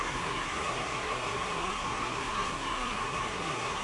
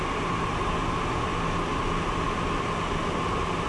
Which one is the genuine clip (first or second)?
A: second